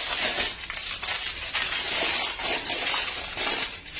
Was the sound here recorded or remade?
remade